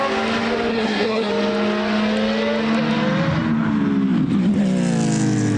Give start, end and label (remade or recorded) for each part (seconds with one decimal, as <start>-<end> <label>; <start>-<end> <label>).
0.0-0.7 recorded; 0.7-1.3 remade; 1.3-5.6 recorded